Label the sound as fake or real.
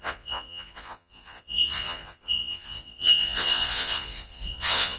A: fake